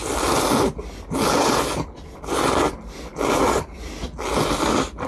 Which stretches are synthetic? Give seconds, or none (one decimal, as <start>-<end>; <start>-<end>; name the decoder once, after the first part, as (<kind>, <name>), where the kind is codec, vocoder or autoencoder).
none